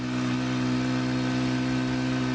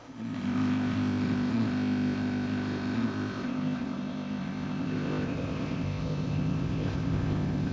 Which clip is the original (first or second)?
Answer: first